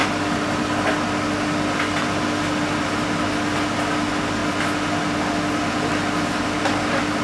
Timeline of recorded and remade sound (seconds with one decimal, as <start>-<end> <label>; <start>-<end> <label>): 0.0-7.2 recorded